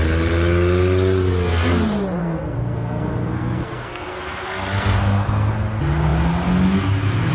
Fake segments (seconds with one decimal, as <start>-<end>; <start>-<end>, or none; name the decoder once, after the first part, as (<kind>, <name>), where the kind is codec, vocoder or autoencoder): 2.2-5.5 (codec, SNAC)

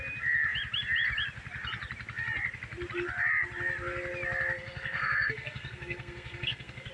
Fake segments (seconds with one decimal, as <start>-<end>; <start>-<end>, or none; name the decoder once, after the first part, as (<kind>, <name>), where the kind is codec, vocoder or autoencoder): 4.6-6.9 (codec, SNAC)

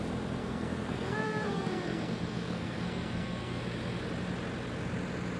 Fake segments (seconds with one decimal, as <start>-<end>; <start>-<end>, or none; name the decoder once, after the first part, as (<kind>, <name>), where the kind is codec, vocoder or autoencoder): 0.4-3.6 (codec, SNAC)

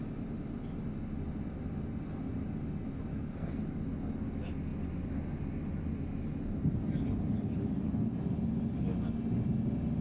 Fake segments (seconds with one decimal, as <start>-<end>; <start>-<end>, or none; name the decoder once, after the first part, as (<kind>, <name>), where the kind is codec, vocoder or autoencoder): 3.1-3.6 (codec, SNAC)

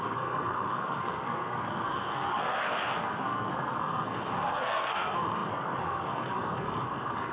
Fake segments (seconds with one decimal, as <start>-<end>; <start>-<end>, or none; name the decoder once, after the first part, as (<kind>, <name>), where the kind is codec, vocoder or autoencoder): 0.0-7.3 (codec, SNAC)

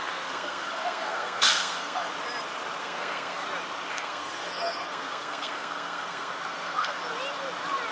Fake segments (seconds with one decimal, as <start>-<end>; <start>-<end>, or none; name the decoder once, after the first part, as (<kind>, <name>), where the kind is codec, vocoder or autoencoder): 0.0-2.1 (codec, SNAC); 2.8-3.4; 3.9-7.0

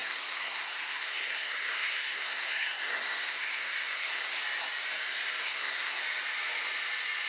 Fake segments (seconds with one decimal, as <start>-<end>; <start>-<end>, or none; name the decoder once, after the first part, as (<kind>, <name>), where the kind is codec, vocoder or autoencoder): 0.0-4.4 (codec, SNAC); 5.4-6.0